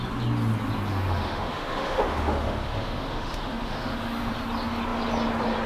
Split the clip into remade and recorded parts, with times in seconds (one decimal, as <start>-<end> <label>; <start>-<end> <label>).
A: 0.0-0.9 recorded; 0.9-4.3 remade; 4.3-5.7 recorded